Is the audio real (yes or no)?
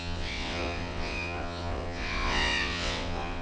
no